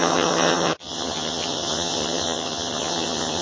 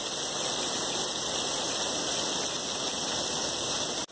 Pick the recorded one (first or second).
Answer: second